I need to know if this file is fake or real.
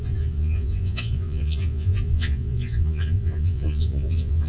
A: fake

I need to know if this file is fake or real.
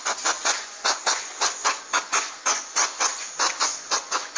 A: fake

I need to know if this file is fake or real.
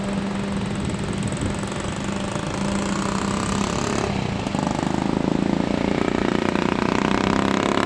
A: real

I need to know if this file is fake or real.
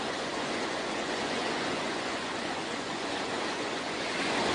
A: fake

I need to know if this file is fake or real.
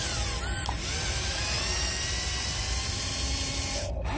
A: real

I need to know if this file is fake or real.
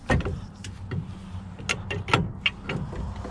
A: real